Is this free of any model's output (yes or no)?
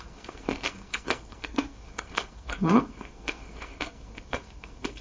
no